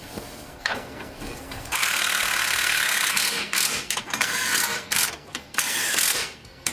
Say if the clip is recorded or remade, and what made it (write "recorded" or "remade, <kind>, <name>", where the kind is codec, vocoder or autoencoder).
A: remade, codec, SNAC